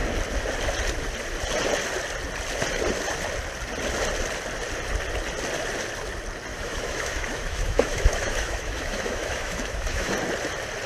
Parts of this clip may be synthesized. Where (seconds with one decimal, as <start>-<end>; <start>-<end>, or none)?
6.5-10.1